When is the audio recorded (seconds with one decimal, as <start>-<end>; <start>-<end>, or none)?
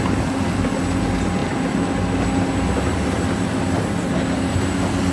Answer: 0.0-5.1